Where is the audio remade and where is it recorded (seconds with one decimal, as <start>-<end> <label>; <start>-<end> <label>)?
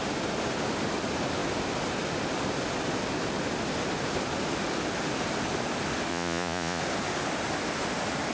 0.0-6.1 recorded; 6.1-6.8 remade; 6.8-8.3 recorded